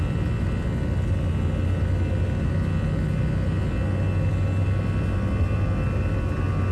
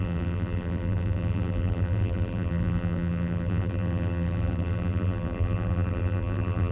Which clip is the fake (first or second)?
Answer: second